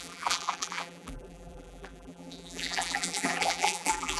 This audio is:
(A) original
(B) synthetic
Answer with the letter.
B